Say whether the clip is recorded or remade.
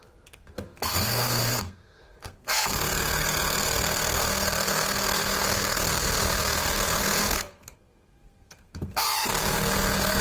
remade